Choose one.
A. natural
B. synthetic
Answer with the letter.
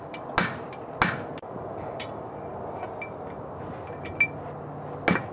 A